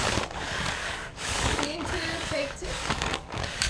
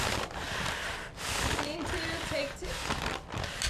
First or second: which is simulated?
first